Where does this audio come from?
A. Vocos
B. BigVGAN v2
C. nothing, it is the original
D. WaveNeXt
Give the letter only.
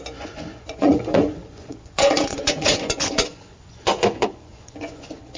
A